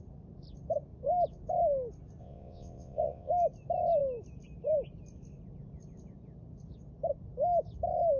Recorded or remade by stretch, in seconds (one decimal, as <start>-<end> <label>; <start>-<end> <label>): 0.0-2.2 recorded; 2.2-3.3 remade; 3.3-8.2 recorded